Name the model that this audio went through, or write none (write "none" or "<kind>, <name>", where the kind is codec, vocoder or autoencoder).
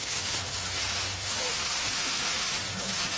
autoencoder, DAC-VAE